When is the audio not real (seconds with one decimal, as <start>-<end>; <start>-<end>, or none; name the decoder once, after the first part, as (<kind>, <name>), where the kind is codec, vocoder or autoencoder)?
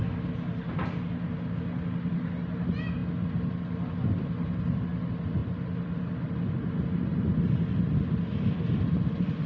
none